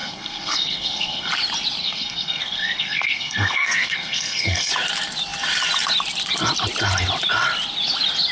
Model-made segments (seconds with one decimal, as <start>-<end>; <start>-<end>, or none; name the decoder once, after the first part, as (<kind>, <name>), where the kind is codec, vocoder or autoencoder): 0.0-1.3 (codec, SNAC); 1.8-4.7

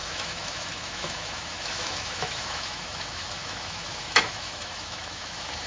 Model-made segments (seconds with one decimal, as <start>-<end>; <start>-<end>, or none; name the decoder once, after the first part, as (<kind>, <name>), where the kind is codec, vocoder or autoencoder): 0.0-5.7 (autoencoder, DAC-VAE)